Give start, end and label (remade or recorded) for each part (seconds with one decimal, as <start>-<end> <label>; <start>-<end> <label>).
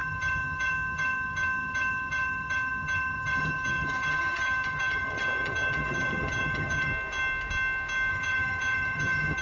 0.0-6.9 remade; 6.9-8.1 recorded; 8.1-9.4 remade